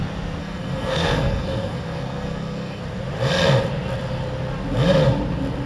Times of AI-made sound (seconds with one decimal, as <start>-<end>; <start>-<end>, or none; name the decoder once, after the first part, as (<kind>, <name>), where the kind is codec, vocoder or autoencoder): 0.4-2.8 (codec, SNAC)